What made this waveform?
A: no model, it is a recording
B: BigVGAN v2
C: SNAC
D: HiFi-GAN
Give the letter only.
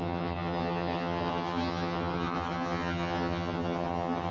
D